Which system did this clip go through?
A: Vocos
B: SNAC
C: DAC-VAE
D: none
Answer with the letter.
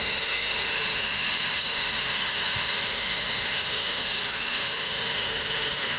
C